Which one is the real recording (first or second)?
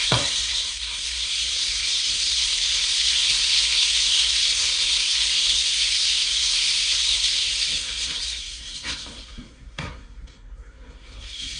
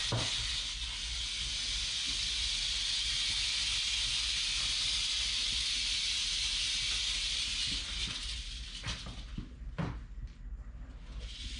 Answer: second